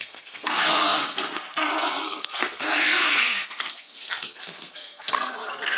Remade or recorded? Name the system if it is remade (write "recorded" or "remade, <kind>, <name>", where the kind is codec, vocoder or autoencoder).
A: remade, codec, SNAC